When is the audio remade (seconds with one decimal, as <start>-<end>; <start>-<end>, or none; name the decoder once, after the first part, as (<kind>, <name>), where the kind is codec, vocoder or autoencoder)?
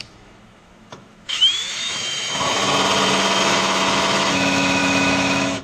0.0-2.6 (autoencoder, DAC-VAE); 3.4-5.6